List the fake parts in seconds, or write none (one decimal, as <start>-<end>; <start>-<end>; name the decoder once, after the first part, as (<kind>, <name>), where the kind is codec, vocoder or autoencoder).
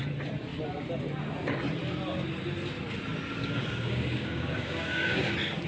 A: 3.4-5.3 (codec, DAC)